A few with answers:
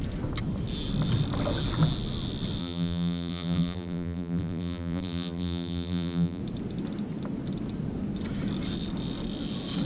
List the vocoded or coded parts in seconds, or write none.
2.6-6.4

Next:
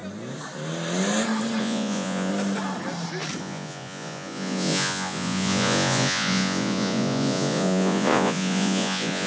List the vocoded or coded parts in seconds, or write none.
1.6-2.3; 3.4-9.3